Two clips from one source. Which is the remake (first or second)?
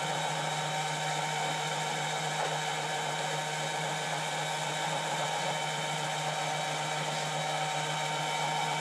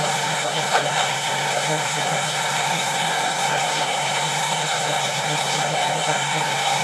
second